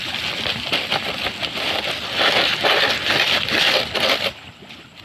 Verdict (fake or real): real